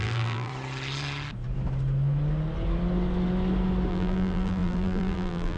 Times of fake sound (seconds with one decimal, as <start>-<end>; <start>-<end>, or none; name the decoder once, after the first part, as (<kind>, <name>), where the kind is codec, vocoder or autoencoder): 0.0-0.5 (vocoder, BigVGAN v2); 3.9-5.6